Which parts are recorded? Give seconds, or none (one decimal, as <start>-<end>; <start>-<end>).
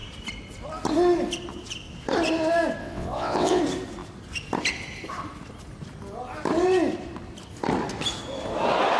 0.0-2.8; 3.6-9.0